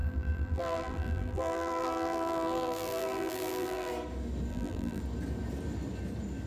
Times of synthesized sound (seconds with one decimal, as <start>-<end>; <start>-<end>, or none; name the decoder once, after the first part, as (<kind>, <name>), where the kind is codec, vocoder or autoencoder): 0.0-3.9 (vocoder, BigVGAN v2); 4.5-5.0